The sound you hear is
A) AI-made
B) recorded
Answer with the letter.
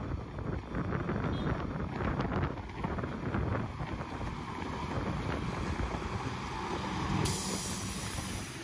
B